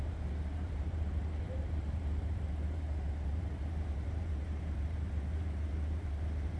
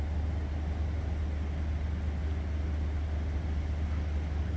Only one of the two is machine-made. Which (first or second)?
first